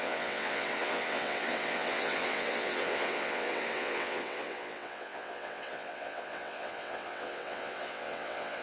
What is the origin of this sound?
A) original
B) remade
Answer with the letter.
B